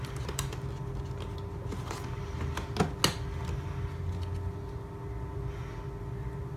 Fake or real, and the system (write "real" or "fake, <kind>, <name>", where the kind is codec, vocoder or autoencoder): real